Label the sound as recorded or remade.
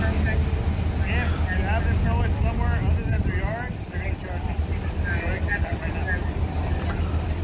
recorded